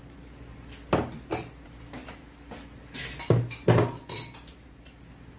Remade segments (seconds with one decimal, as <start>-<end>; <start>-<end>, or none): none